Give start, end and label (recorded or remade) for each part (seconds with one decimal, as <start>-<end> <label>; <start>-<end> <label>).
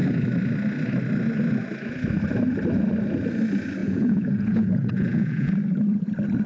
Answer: 0.0-3.8 recorded; 3.8-5.5 remade; 5.5-6.5 recorded